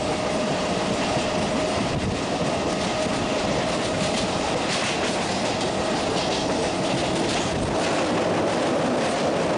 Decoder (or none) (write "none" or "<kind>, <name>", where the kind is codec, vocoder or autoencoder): none